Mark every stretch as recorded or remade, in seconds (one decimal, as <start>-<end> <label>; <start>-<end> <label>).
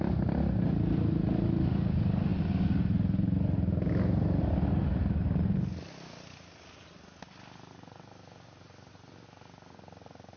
0.0-10.4 recorded